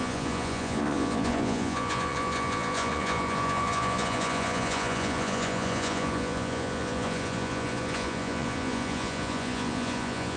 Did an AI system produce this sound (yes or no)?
yes